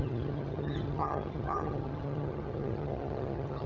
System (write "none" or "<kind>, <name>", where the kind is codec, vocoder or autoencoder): vocoder, HiFi-GAN